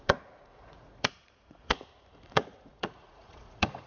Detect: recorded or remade remade